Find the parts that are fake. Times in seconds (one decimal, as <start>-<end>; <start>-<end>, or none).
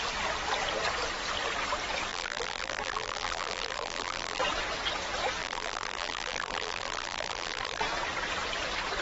2.1-4.4; 5.4-7.8